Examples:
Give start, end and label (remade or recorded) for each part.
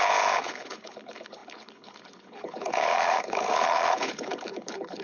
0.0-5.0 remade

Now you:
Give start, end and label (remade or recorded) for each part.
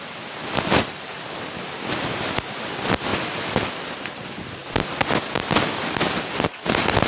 0.0-7.1 recorded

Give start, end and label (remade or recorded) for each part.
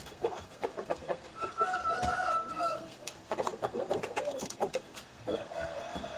0.0-1.8 remade; 1.8-2.5 recorded; 2.5-6.2 remade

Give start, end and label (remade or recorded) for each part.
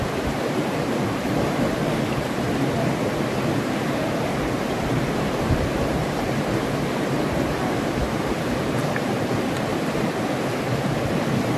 0.0-9.7 remade; 9.7-11.6 recorded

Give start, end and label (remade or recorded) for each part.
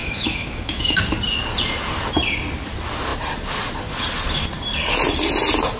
0.0-1.0 remade; 1.0-5.8 recorded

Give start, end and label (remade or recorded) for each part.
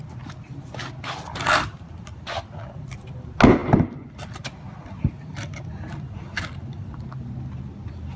0.0-8.2 recorded